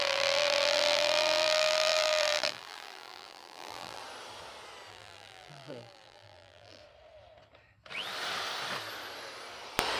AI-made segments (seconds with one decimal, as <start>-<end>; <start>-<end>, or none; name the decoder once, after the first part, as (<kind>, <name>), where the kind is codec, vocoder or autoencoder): 0.0-4.0 (vocoder, BigVGAN v2); 4.9-6.8